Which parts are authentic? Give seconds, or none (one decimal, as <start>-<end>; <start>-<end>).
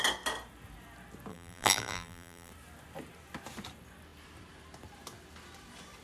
0.0-1.3; 2.5-6.0